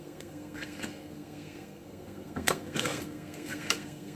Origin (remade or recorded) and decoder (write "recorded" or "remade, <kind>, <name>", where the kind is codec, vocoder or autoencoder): remade, codec, SNAC